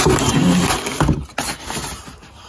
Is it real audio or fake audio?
real